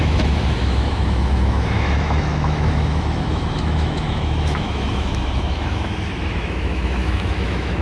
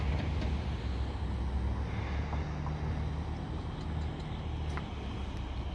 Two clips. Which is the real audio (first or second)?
second